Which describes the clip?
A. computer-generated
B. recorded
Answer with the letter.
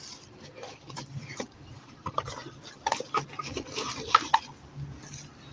B